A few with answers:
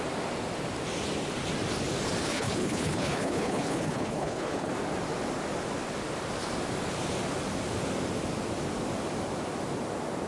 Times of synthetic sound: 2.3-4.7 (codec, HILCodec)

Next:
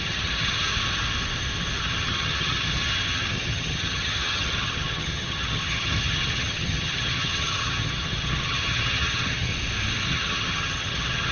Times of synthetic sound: 0.0-0.7 (vocoder, HiFi-GAN); 1.8-9.5; 10.1-11.3

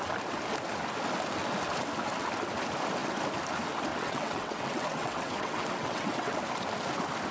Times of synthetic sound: 3.9-6.4 (vocoder, WaveNeXt)

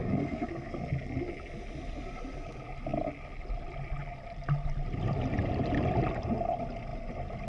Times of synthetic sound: 0.0-0.7 (codec, SNAC)

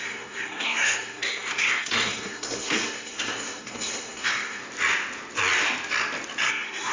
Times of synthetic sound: 0.0-4.6 (codec, SNAC); 6.5-6.9